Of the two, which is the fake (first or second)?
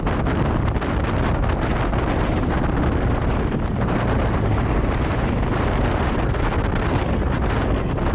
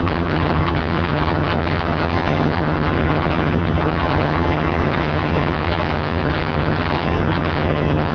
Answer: second